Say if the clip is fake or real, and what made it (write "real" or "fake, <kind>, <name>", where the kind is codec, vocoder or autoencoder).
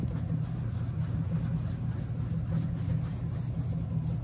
real